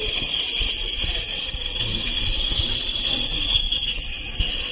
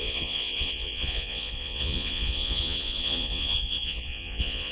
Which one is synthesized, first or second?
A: second